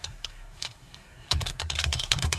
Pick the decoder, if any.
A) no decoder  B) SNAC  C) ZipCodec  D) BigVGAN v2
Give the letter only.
B